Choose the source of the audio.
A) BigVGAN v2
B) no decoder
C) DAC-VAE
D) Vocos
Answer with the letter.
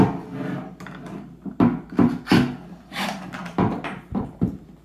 B